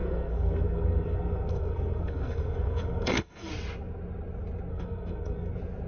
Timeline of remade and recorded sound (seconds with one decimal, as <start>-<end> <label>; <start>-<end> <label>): 0.0-3.5 remade; 3.5-4.7 recorded; 4.7-5.5 remade; 5.5-5.9 recorded